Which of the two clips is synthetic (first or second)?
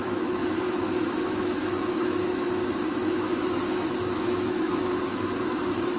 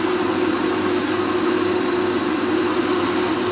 first